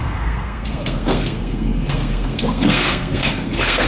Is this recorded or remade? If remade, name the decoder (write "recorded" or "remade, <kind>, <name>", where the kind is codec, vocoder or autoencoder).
remade, codec, SNAC